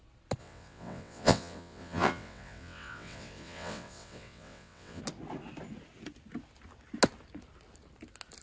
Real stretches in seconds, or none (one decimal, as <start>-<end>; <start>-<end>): 0.0-0.4; 5.0-8.4